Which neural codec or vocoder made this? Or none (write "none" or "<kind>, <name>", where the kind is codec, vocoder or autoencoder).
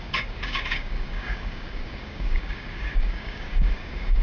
codec, DAC